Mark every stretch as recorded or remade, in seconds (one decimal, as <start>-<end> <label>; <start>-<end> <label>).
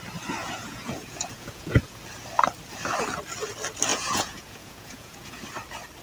0.0-0.4 recorded; 0.4-2.0 remade; 2.0-3.9 recorded; 3.9-5.4 remade; 5.4-6.0 recorded